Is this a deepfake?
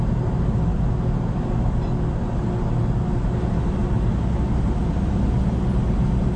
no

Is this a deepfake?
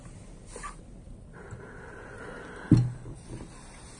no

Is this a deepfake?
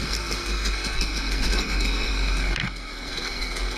yes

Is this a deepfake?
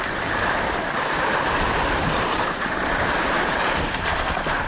yes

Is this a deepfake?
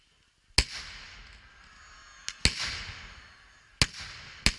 no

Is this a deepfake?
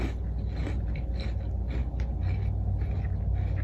no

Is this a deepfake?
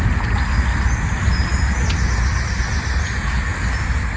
no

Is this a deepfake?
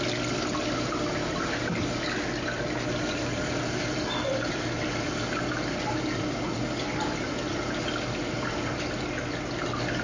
yes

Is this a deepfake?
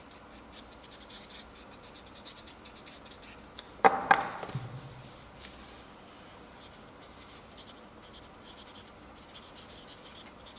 no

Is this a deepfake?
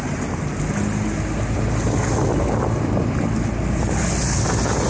no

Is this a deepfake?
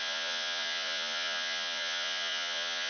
yes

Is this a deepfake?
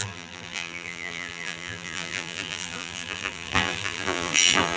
yes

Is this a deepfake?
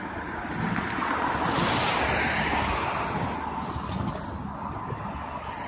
no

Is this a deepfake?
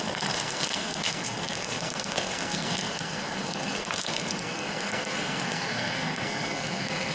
yes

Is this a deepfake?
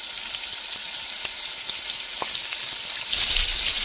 no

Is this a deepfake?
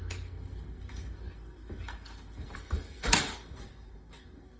yes